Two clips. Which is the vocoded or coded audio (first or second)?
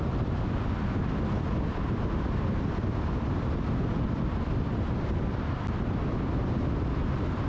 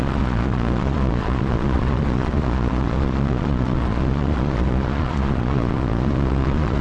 second